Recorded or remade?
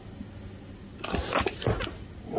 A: recorded